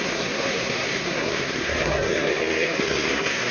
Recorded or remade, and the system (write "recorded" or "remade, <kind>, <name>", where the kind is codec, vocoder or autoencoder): remade, codec, SNAC